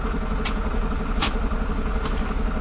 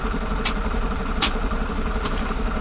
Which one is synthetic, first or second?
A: second